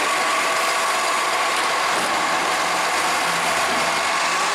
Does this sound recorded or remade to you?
recorded